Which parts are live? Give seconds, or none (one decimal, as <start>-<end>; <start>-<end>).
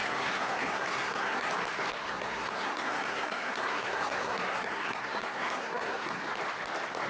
1.5-2.0; 6.2-7.1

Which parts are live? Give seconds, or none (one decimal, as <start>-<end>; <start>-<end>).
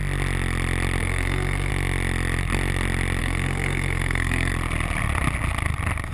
0.0-1.0; 1.7-3.2; 4.5-6.1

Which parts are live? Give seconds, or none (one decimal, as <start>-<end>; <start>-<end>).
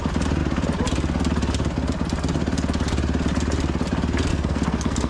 0.0-4.3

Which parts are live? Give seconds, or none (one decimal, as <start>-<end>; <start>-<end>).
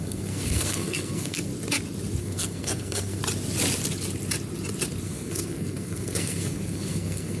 1.5-2.2; 3.2-5.0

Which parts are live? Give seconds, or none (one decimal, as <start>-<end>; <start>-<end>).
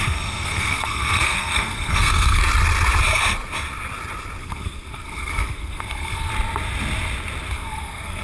2.4-4.4; 6.3-7.5